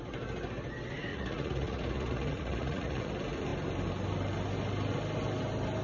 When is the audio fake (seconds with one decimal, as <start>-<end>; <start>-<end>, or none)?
1.1-3.1